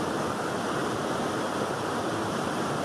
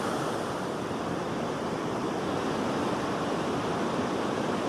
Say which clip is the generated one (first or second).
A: second